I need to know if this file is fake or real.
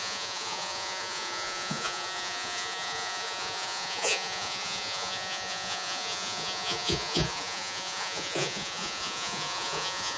fake